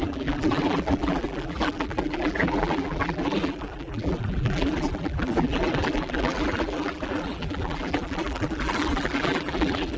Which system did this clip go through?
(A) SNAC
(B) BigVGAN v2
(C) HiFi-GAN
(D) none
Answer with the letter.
B